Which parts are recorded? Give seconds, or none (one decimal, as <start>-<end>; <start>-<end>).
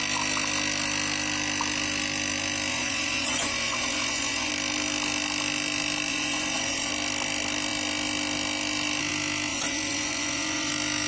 0.0-2.7; 4.5-6.1; 6.9-9.5; 10.7-11.1